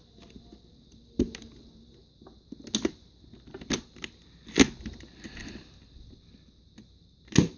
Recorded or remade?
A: recorded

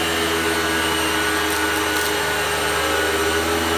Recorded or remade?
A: recorded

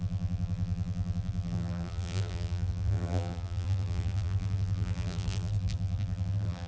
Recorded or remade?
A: remade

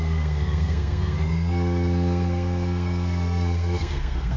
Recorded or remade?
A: remade